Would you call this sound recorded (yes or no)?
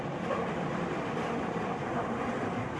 yes